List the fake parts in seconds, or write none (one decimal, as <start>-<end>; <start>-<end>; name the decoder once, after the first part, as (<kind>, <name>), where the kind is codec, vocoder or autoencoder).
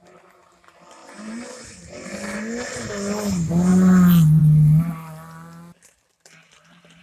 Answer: none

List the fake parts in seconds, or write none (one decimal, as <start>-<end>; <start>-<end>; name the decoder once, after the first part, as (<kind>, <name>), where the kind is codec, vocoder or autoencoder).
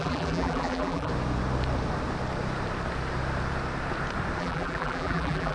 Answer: 0.0-1.1 (vocoder, BigVGAN v2); 4.4-5.5